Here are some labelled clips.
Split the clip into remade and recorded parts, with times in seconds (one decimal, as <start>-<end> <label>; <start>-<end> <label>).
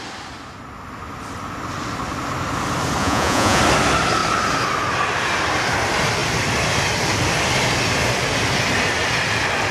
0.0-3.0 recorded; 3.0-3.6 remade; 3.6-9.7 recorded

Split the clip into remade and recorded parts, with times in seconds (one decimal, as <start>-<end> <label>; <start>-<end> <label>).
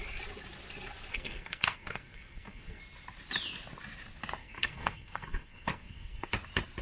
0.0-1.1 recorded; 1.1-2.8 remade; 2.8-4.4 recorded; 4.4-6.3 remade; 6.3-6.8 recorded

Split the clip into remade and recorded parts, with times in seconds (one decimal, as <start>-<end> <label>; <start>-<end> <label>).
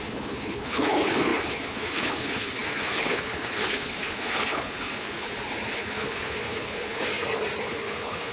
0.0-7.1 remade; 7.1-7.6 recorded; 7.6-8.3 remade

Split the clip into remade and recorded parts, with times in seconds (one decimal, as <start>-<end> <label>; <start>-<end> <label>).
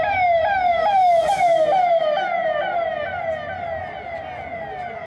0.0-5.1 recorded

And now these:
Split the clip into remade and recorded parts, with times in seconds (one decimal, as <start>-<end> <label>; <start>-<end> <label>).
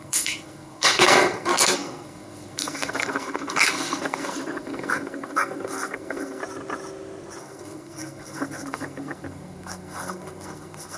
0.0-6.4 remade; 6.4-7.4 recorded; 7.4-11.0 remade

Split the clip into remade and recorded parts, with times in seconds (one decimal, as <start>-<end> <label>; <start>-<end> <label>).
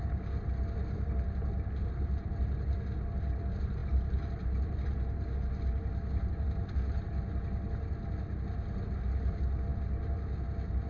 0.0-10.9 recorded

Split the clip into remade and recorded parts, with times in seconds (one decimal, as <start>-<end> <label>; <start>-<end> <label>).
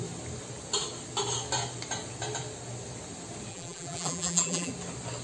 0.0-3.5 recorded; 3.5-4.7 remade; 4.7-5.2 recorded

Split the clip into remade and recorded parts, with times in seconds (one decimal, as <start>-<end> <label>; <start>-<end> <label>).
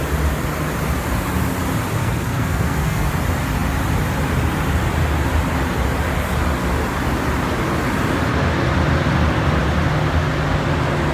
0.0-2.0 recorded; 2.0-3.1 remade; 3.1-11.1 recorded